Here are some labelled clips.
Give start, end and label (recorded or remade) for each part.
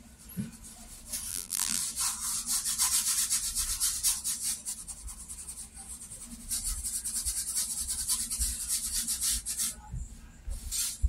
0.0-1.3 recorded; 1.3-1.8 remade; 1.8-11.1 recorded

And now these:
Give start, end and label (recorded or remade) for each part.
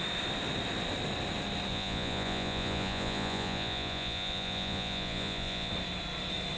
0.0-1.7 recorded; 1.7-5.7 remade; 5.7-6.6 recorded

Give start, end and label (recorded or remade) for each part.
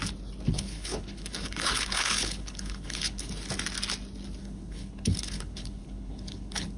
0.0-0.5 recorded; 0.5-3.3 remade; 3.3-4.4 recorded; 4.4-6.8 remade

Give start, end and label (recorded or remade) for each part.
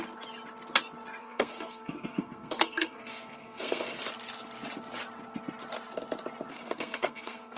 0.0-1.2 recorded; 1.2-4.0 remade; 4.0-6.5 recorded; 6.5-7.6 remade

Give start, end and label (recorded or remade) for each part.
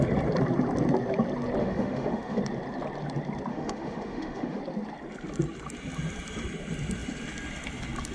0.0-1.6 recorded; 1.6-2.4 remade; 2.4-3.5 recorded; 3.5-4.6 remade; 4.6-8.1 recorded